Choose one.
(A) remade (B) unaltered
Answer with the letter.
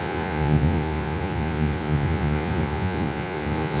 A